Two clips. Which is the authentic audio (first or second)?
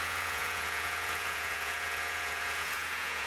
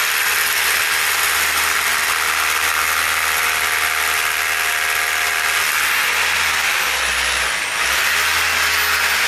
second